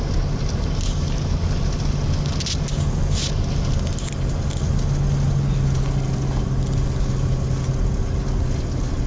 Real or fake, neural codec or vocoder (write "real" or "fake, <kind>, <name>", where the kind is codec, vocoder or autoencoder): real